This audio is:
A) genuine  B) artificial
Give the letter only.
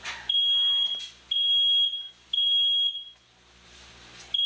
A